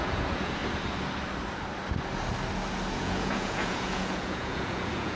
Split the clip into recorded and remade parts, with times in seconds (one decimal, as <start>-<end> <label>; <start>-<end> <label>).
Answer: 0.0-0.6 remade; 0.6-2.9 recorded; 2.9-5.2 remade